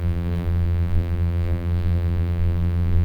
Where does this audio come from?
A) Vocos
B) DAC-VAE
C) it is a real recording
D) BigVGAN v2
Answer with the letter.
D